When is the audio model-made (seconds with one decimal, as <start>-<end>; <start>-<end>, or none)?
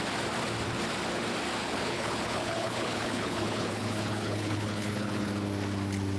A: 1.6-5.3